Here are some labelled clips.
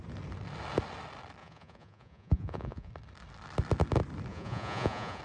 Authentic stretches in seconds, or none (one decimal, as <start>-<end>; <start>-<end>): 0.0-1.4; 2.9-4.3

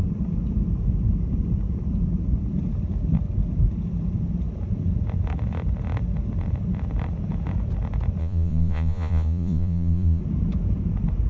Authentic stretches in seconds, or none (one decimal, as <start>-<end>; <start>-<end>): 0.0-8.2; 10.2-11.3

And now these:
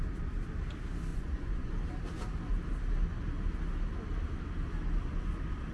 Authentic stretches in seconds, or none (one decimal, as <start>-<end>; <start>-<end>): 0.0-1.1; 1.7-5.7